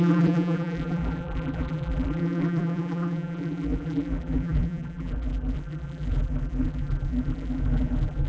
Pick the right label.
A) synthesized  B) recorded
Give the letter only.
A